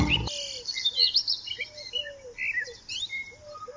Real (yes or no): yes